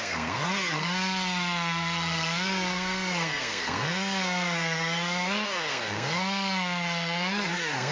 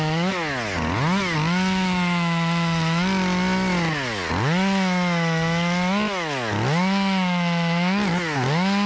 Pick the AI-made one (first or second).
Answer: first